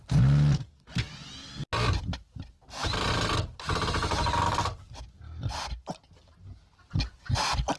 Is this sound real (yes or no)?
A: yes